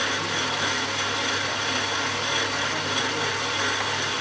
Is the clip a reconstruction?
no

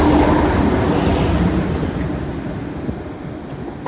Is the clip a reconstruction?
no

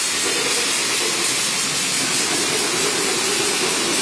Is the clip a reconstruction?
no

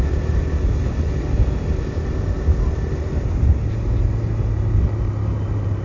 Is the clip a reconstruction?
no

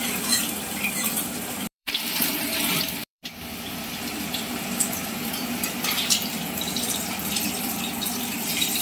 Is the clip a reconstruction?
yes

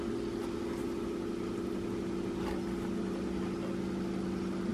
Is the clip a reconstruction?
no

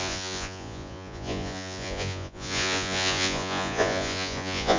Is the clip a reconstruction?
yes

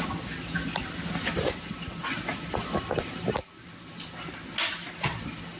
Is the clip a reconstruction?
no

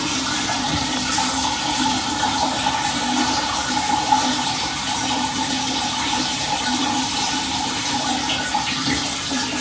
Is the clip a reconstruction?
yes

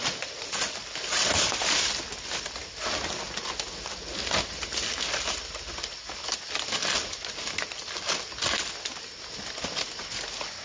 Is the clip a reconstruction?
no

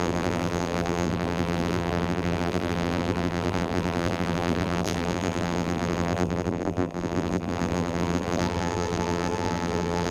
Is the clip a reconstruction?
yes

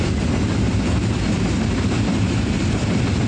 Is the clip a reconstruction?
no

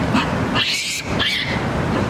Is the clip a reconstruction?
no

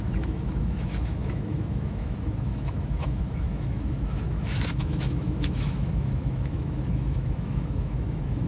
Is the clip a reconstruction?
yes